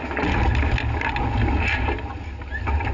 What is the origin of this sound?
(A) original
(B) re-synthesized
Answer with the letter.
A